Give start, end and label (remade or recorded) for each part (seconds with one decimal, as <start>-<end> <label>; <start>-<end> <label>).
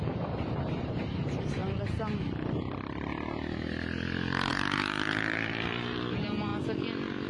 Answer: 0.0-1.6 remade; 1.6-4.5 recorded; 4.5-6.5 remade; 6.5-7.3 recorded